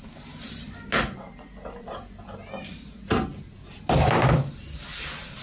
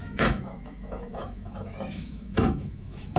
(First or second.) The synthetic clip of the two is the second